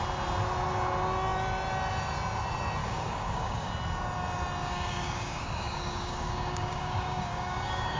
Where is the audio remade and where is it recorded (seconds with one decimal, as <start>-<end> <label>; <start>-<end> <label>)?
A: 0.0-2.8 recorded; 2.8-3.7 remade; 3.7-4.6 recorded; 4.6-8.0 remade